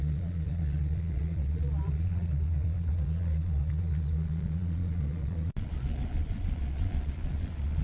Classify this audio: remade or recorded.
remade